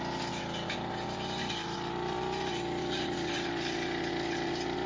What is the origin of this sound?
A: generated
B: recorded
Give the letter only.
B